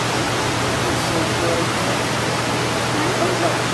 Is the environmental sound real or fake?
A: real